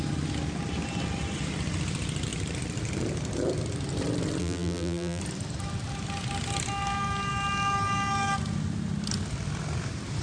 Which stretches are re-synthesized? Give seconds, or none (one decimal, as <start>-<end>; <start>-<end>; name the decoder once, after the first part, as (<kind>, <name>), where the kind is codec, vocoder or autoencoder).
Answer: 4.4-5.2 (vocoder, BigVGAN v2)